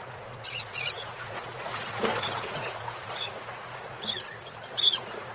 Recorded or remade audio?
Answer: remade